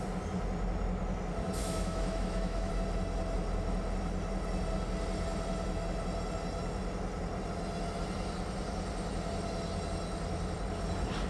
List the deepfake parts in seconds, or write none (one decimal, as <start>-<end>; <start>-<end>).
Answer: 1.6-2.7